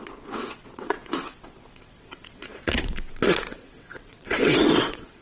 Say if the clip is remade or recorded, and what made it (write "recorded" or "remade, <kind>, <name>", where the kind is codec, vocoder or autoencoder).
remade, vocoder, WaveNeXt